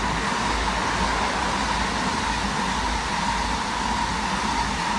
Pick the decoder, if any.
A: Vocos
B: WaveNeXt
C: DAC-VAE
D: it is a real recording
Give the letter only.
D